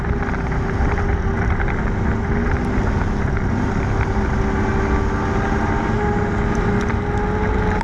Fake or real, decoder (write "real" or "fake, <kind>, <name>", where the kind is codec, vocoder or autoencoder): real